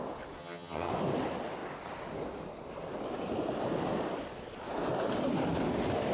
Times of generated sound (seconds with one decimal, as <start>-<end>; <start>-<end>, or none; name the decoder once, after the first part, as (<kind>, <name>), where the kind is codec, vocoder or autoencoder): 0.4-0.9 (vocoder, HiFi-GAN)